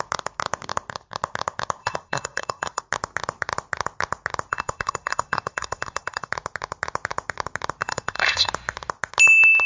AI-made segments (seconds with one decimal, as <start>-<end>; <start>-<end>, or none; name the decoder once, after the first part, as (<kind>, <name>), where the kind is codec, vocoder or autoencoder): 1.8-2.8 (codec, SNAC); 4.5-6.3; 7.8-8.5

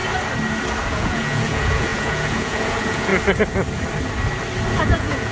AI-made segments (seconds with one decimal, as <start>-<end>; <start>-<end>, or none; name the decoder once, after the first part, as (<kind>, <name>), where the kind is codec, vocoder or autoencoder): 0.9-3.1 (vocoder, Vocos); 4.8-5.3

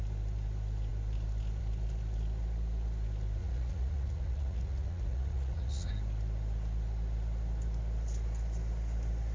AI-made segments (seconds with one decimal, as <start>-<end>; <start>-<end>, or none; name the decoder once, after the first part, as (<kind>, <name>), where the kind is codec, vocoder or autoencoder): 3.4-5.9 (vocoder, Vocos)